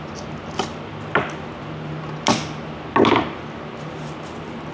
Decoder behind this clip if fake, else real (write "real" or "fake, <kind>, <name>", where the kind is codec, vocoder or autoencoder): real